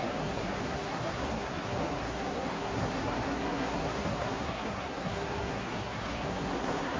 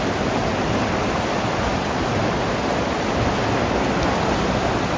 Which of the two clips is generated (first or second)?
first